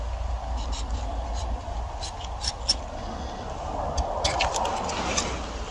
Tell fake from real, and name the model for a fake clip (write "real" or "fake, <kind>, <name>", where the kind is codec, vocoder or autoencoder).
real